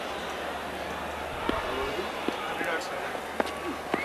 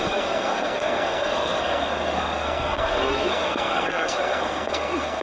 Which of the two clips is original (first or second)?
first